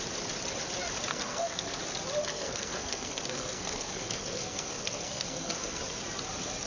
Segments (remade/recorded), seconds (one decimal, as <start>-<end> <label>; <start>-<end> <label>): 0.0-1.1 recorded; 1.1-1.8 remade; 1.8-2.3 recorded; 2.3-5.8 remade; 5.8-6.7 recorded